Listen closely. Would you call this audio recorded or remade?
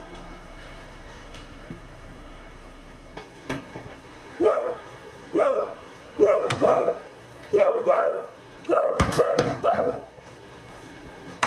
remade